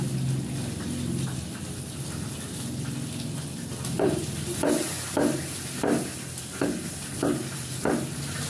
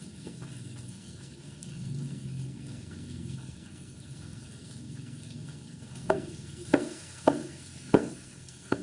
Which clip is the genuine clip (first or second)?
first